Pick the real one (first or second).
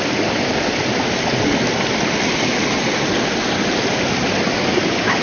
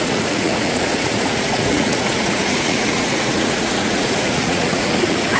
first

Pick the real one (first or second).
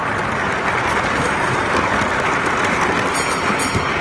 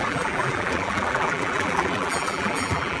first